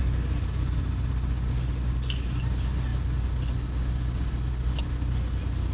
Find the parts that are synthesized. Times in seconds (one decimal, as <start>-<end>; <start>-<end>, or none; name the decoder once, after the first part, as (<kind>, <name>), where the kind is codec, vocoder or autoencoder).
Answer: none